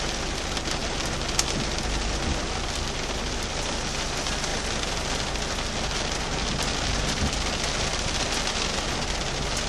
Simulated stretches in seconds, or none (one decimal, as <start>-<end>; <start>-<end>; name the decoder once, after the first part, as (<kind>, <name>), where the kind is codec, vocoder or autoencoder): none